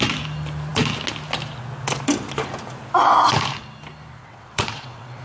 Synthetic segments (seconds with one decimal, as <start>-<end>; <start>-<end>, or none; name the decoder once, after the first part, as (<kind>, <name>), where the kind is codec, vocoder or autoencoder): 4.2-5.2 (vocoder, WaveNeXt)